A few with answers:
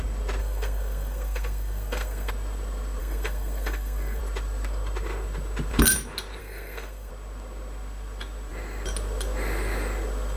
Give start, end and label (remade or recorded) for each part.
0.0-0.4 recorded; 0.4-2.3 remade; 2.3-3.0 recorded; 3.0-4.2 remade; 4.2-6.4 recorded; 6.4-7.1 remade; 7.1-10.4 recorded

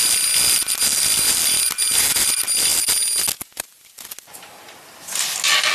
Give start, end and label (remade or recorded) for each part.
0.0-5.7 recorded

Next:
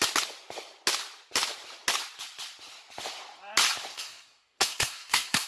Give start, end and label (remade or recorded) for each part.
0.0-3.9 recorded; 3.9-5.5 remade